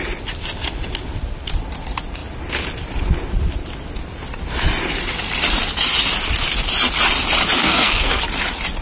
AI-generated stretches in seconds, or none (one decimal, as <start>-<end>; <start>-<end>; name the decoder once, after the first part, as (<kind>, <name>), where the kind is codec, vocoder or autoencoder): 7.6-8.2 (codec, SNAC)